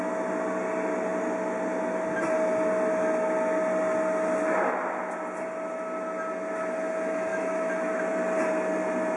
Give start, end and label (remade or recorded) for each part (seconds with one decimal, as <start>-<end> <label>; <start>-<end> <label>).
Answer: 0.0-7.3 recorded; 7.3-8.0 remade; 8.0-9.2 recorded